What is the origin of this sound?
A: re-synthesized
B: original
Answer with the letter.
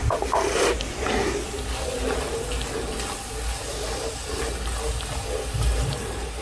B